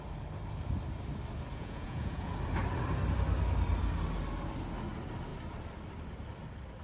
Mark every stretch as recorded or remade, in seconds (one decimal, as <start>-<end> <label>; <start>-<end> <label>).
0.0-1.5 recorded; 1.5-2.3 remade; 2.3-6.8 recorded